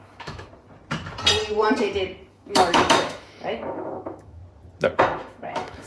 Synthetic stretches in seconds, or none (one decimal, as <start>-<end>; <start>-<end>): 0.0-0.5; 2.3-4.4; 5.0-5.9